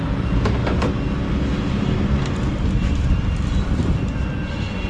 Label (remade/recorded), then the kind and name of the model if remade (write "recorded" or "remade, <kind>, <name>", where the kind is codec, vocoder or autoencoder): recorded